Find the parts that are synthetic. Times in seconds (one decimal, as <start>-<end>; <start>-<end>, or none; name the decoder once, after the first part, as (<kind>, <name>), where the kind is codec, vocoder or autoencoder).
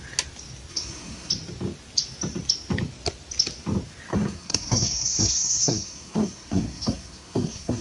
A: 0.7-1.3 (codec, SNAC); 4.1-7.8